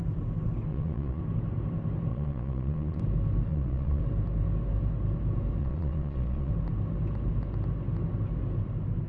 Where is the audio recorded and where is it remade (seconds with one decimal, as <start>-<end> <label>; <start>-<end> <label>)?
0.0-0.7 recorded; 0.7-1.2 remade; 1.2-2.1 recorded; 2.1-3.0 remade; 3.0-3.5 recorded; 3.5-4.0 remade; 4.0-5.6 recorded; 5.6-6.5 remade; 6.5-9.1 recorded